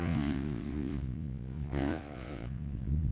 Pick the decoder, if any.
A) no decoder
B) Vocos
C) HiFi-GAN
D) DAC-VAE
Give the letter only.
B